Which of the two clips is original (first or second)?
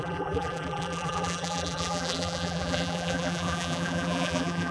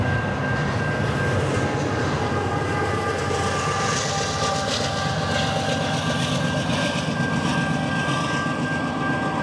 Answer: second